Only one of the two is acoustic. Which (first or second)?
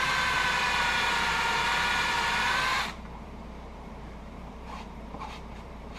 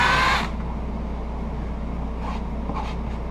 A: second